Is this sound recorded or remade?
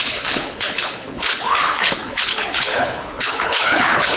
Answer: remade